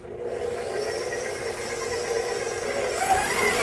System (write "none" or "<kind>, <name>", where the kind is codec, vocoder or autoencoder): none